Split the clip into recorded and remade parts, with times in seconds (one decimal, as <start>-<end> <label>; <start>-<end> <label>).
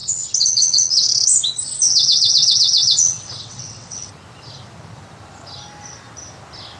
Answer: 0.0-4.1 remade; 4.1-6.8 recorded